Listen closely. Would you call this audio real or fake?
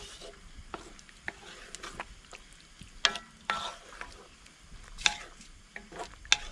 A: real